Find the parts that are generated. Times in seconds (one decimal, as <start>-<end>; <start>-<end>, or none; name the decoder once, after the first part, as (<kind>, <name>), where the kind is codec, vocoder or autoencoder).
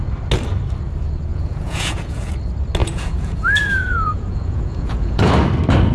1.3-2.3 (vocoder, Vocos); 2.8-5.3